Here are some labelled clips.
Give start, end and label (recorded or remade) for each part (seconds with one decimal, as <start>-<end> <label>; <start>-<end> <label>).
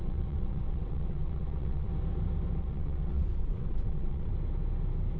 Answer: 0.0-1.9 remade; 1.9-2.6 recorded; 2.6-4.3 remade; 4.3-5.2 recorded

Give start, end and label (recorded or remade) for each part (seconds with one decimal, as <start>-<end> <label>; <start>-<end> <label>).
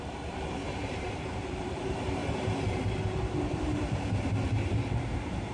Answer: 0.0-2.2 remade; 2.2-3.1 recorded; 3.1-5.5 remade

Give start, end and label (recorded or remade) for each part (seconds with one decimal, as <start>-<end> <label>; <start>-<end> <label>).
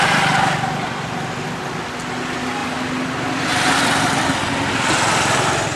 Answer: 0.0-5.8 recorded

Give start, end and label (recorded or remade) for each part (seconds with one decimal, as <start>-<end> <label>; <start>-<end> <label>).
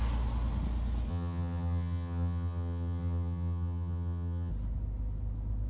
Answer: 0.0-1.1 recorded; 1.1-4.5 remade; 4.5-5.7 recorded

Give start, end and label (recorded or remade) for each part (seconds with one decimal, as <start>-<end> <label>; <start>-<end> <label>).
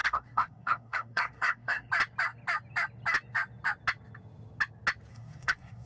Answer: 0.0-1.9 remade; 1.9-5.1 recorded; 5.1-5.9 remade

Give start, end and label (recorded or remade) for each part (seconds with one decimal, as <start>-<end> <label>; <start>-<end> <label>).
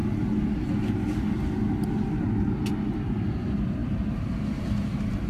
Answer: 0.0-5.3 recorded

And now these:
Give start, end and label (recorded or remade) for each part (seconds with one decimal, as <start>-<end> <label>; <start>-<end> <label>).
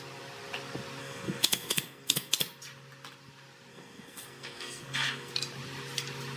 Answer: 0.0-1.0 recorded; 1.0-2.3 remade; 2.3-3.7 recorded; 3.7-5.3 remade; 5.3-6.4 recorded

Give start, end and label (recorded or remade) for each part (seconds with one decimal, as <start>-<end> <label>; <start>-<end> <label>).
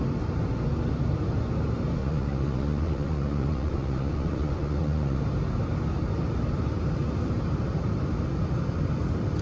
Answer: 0.0-2.0 recorded; 2.0-5.2 remade; 5.2-9.4 recorded